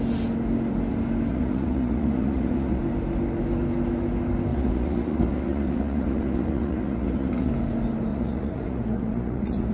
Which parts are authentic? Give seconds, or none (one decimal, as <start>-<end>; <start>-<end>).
0.0-1.3; 2.8-4.5; 7.5-8.1